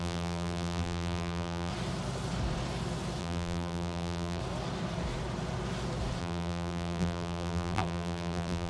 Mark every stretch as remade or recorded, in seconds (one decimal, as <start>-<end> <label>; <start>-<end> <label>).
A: 0.0-1.7 remade; 1.7-3.2 recorded; 3.2-4.4 remade; 4.4-6.2 recorded; 6.2-8.7 remade